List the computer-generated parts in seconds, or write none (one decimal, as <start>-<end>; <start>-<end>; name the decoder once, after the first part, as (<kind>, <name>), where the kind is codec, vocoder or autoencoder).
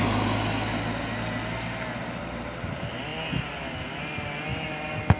none